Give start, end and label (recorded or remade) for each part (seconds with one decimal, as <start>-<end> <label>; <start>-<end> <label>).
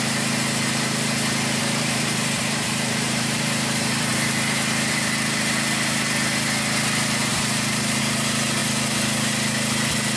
0.0-1.6 recorded; 1.6-4.1 remade; 4.1-7.3 recorded; 7.3-8.0 remade; 8.0-10.2 recorded